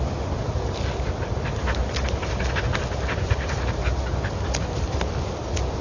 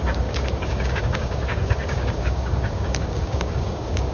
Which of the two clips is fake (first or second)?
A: second